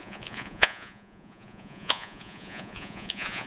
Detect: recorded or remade remade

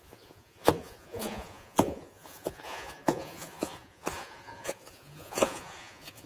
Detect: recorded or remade remade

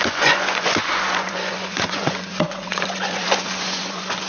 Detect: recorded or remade remade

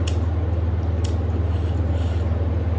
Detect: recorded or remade recorded